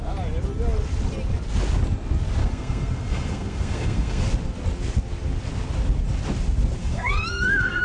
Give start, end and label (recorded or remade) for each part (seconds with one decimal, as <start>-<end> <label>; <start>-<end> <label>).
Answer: 0.0-2.4 recorded; 2.4-4.2 remade; 4.2-6.8 recorded; 6.8-7.8 remade